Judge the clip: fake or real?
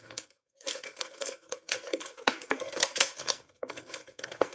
fake